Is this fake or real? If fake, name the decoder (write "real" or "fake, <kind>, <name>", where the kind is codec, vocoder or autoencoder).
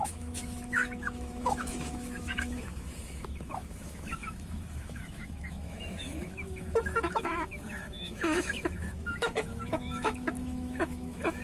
fake, autoencoder, DAC-VAE